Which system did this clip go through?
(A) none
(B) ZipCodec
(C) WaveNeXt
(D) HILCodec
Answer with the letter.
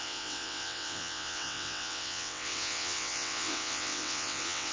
C